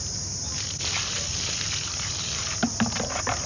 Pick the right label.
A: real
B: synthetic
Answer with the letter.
A